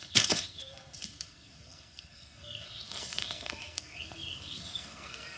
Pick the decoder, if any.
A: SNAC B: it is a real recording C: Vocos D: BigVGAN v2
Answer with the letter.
A